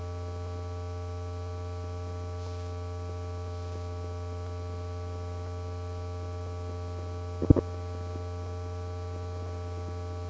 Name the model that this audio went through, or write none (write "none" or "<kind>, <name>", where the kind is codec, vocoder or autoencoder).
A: none